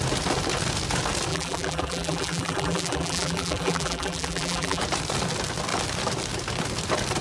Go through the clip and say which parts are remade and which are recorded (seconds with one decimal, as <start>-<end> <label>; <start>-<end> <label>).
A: 0.0-1.3 recorded; 1.3-4.8 remade; 4.8-7.2 recorded